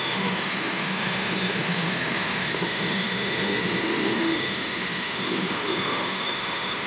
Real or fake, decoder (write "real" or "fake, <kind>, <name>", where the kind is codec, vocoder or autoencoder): fake, autoencoder, DAC-VAE